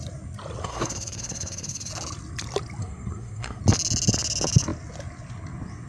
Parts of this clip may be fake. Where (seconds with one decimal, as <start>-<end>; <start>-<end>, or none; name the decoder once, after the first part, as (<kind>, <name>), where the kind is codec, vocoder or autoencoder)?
0.6-1.9 (codec, SNAC); 2.8-3.6